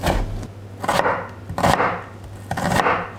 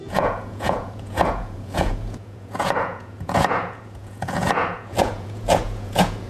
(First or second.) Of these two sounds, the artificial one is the second